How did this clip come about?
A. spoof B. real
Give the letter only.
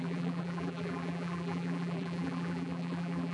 A